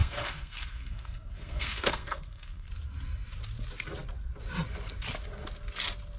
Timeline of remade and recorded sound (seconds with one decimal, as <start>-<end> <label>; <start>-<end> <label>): 0.0-2.7 remade; 2.7-6.2 recorded